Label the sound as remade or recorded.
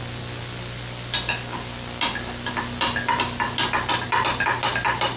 recorded